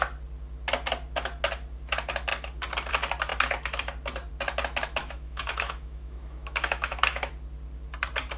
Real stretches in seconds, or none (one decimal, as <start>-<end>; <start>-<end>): 0.0-5.0; 7.3-8.4